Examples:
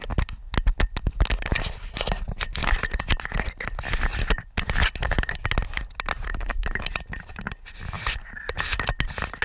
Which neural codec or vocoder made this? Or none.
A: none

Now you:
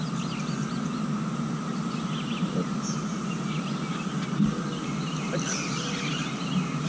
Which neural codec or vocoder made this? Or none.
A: none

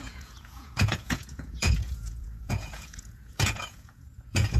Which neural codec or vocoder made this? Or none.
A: vocoder, Vocos